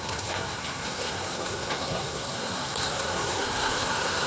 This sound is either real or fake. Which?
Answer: fake